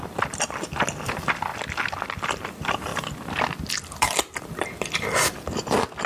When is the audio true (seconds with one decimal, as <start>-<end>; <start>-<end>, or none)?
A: 0.0-1.1; 1.5-2.4; 2.9-4.4